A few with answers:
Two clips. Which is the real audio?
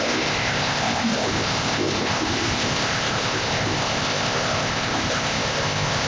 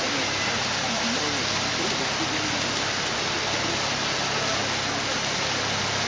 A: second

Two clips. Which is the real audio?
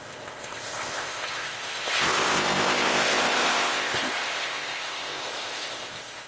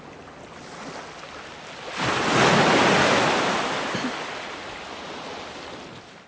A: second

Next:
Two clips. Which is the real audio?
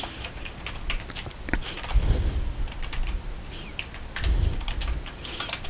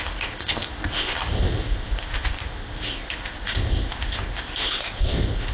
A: first